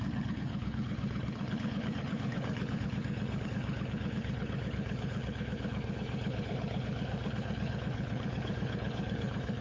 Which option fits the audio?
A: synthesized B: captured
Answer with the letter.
A